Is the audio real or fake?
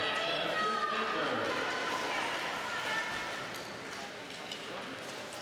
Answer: real